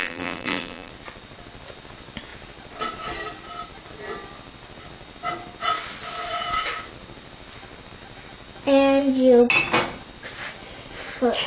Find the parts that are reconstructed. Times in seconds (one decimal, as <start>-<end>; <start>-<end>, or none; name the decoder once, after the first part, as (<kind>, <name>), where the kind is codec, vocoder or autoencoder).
0.0-0.9 (vocoder, BigVGAN v2)

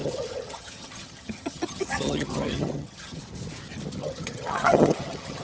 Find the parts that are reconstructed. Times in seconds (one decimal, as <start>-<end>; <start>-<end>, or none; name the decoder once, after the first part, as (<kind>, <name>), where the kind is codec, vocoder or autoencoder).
0.0-3.2 (vocoder, HiFi-GAN); 4.0-5.4

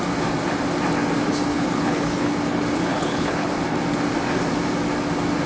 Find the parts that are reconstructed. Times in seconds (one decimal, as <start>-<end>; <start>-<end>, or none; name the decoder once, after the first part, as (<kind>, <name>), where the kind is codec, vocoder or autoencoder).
1.5-2.3 (codec, HILCodec); 2.9-3.5

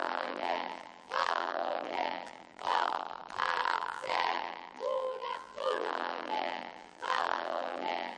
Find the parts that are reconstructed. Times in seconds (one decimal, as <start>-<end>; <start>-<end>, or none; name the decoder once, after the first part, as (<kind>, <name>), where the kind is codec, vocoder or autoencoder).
0.0-8.2 (vocoder, BigVGAN v2)

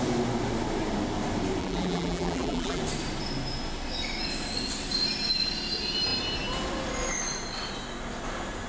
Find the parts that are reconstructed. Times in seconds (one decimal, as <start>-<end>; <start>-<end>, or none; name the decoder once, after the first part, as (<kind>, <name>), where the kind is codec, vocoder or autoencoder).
1.6-2.8 (vocoder, BigVGAN v2)

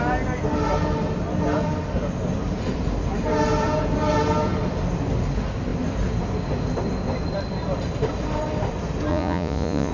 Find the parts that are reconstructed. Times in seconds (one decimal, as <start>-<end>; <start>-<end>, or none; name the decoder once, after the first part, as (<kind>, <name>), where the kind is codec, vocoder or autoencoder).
9.1-9.9 (vocoder, Vocos)

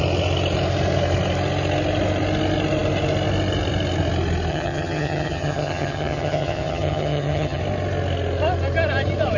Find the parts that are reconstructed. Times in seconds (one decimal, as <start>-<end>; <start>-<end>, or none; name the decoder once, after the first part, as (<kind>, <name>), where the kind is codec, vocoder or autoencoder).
4.5-7.6 (vocoder, HiFi-GAN)

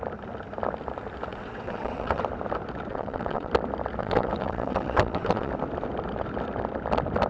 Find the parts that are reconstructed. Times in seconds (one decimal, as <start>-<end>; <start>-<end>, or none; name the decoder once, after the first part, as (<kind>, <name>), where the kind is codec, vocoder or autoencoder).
1.3-2.2 (vocoder, WaveNeXt); 2.9-3.5; 4.0-5.5